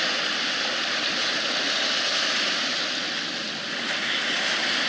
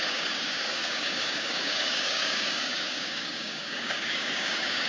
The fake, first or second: second